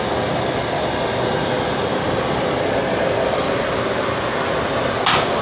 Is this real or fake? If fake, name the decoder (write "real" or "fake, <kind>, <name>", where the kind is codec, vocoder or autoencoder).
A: real